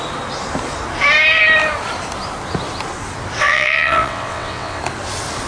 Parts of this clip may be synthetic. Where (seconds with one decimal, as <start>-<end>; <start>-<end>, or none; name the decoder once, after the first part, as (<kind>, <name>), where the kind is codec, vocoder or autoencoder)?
3.4-4.8 (vocoder, WaveNeXt)